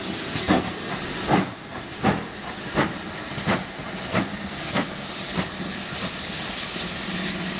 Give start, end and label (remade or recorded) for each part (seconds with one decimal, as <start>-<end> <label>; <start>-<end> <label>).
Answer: 0.0-0.4 recorded; 0.4-0.9 remade; 0.9-4.1 recorded; 4.1-5.1 remade; 5.1-7.6 recorded